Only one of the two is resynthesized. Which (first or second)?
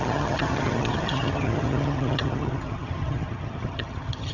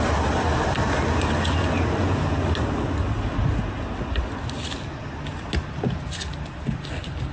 first